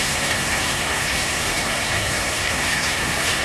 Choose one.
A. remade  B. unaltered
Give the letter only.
A